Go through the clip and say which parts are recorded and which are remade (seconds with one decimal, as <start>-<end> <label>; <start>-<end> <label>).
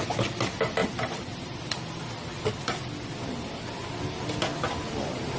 0.0-0.8 recorded; 0.8-4.0 remade; 4.0-4.5 recorded; 4.5-5.4 remade